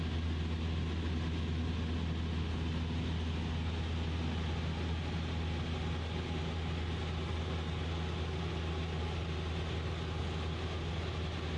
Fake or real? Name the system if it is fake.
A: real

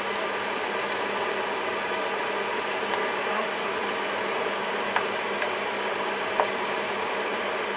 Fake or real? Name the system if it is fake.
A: real